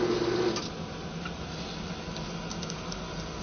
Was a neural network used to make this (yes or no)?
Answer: no